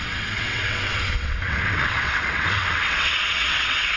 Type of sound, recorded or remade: remade